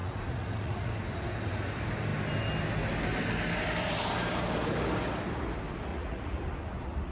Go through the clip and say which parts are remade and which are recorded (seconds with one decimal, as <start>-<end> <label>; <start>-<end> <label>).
0.0-0.9 remade; 0.9-5.9 recorded; 5.9-7.1 remade